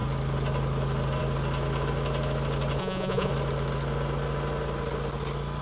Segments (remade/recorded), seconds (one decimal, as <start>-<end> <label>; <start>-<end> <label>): 0.0-2.8 recorded; 2.8-3.3 remade; 3.3-5.6 recorded